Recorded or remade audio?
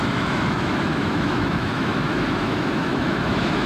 remade